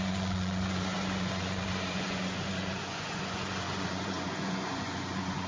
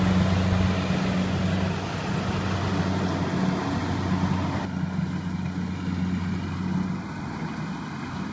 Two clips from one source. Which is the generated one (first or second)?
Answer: first